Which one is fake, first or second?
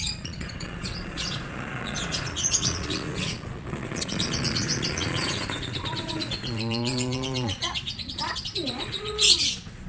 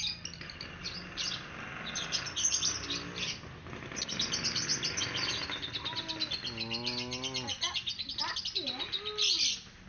first